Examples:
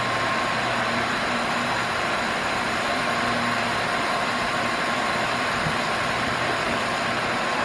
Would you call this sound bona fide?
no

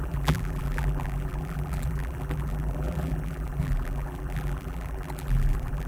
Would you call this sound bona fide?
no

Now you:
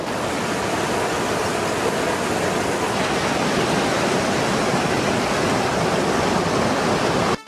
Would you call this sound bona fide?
yes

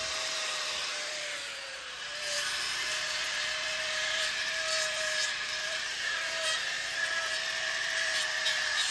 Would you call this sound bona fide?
no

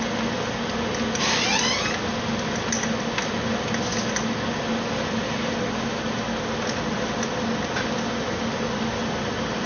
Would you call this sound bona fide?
yes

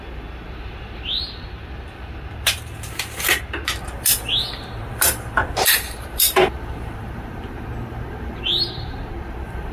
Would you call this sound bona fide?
no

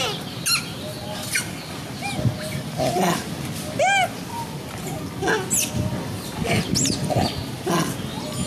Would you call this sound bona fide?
yes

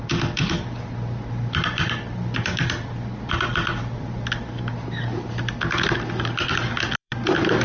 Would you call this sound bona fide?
no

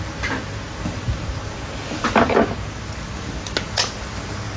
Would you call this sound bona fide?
yes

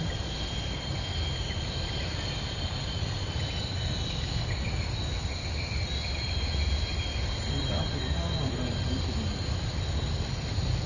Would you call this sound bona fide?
no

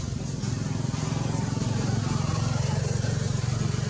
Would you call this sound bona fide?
yes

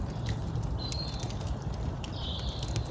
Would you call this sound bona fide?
yes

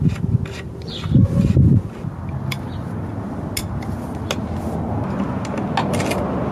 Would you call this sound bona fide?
yes